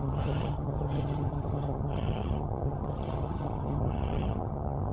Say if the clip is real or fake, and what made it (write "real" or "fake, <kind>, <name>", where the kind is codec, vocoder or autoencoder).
fake, vocoder, HiFi-GAN